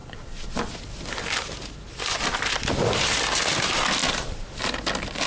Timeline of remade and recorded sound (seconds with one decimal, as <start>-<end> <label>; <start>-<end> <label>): 0.0-4.0 recorded; 4.0-4.6 remade; 4.6-5.3 recorded